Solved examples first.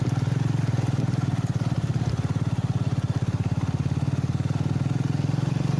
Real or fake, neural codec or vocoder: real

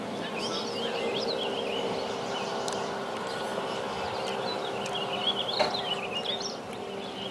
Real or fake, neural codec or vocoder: real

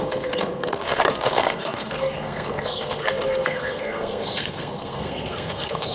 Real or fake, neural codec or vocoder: fake, codec, SNAC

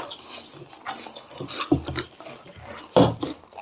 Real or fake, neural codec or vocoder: real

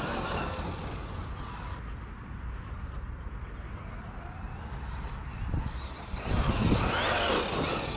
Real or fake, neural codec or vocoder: real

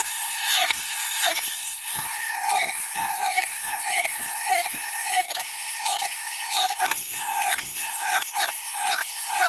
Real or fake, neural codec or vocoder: fake, codec, SNAC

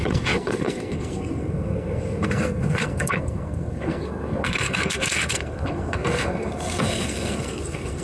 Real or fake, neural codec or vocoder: fake, codec, SNAC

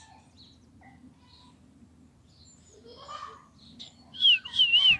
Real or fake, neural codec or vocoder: real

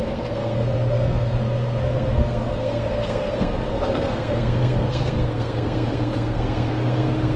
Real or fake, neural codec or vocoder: fake, codec, SNAC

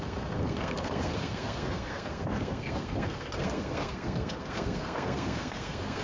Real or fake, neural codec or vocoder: fake, codec, SNAC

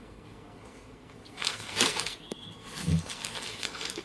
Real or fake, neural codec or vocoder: fake, codec, SNAC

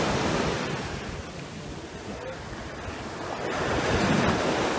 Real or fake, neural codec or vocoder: real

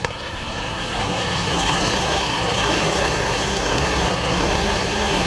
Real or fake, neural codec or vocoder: fake, codec, SNAC